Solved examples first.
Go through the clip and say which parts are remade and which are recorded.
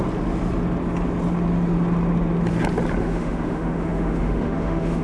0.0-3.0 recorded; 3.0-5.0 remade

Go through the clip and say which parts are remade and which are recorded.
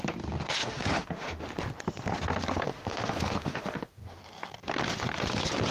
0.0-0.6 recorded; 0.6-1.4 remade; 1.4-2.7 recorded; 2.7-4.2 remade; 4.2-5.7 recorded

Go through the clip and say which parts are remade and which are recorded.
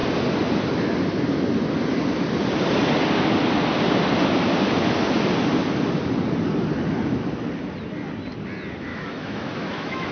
0.0-8.9 recorded; 8.9-10.1 remade